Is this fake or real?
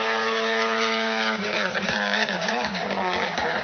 fake